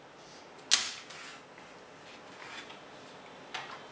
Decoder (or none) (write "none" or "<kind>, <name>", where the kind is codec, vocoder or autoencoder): none